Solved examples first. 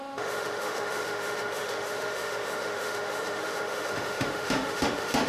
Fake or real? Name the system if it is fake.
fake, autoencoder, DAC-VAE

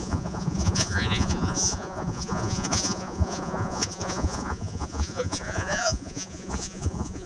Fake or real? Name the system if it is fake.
fake, vocoder, Vocos